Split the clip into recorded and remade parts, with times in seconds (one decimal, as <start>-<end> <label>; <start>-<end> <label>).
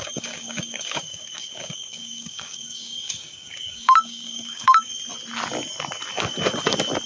0.0-4.9 remade; 4.9-7.1 recorded